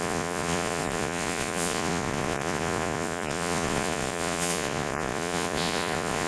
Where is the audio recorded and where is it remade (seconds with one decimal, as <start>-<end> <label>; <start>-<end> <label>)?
0.0-6.3 remade